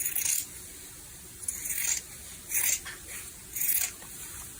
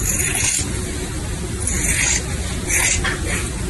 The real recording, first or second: second